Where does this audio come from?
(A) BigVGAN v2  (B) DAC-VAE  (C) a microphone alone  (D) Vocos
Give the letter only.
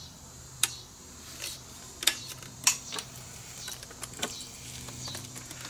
A